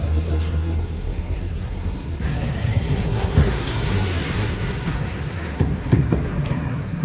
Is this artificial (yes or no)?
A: yes